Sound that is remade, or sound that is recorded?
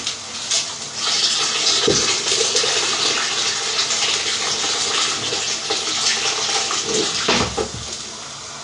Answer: recorded